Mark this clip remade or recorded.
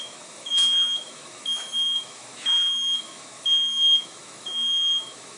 remade